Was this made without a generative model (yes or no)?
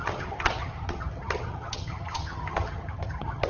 no